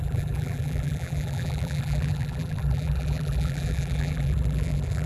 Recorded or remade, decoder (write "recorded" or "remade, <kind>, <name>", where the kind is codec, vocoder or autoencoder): remade, vocoder, BigVGAN v2